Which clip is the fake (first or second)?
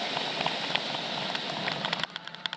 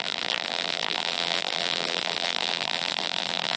second